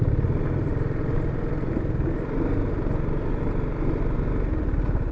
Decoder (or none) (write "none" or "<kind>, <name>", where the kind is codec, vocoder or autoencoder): none